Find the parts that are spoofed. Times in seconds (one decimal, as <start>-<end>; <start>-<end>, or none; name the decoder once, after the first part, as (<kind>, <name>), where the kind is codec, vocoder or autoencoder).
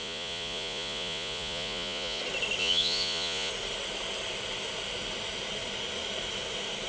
0.0-2.2 (vocoder, Vocos); 2.6-3.5